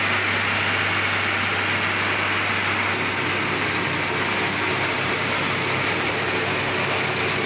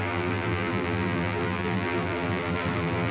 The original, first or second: first